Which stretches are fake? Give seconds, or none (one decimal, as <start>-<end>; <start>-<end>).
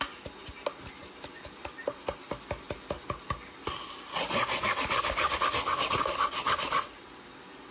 none